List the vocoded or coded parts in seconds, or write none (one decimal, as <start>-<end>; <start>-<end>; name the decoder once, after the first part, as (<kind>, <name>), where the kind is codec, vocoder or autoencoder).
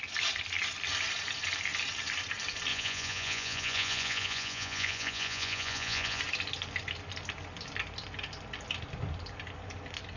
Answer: 2.7-6.2 (vocoder, Vocos)